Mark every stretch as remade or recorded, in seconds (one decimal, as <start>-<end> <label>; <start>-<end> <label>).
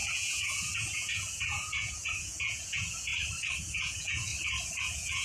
0.0-3.1 remade; 3.1-3.6 recorded; 3.6-4.3 remade; 4.3-4.8 recorded; 4.8-5.2 remade